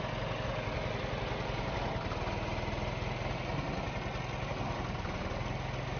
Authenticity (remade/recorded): recorded